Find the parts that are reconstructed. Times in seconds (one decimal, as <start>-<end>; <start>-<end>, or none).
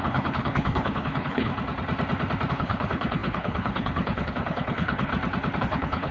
0.0-1.5; 2.5-5.1; 5.6-6.1